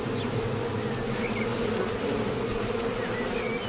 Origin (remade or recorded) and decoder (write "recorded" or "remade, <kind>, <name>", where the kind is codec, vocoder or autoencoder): recorded